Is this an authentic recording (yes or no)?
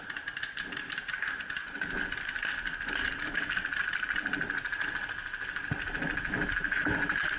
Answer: yes